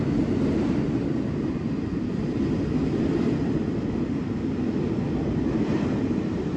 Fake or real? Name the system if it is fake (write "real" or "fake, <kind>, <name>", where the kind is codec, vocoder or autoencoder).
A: real